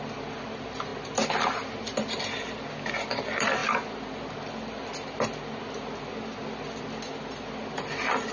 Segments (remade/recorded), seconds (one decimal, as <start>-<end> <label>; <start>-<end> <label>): 0.0-8.3 recorded